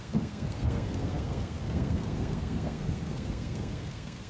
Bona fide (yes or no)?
no